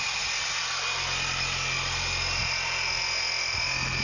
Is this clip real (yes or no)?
yes